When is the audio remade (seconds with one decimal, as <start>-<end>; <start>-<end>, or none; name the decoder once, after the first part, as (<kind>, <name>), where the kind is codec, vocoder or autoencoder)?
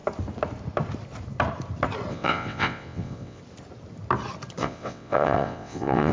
2.1-3.4 (vocoder, WaveNeXt); 4.6-6.1